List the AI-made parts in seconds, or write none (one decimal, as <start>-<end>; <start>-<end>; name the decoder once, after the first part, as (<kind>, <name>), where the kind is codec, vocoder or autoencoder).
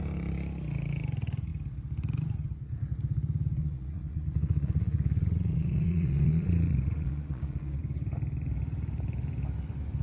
3.6-7.8 (vocoder, Vocos)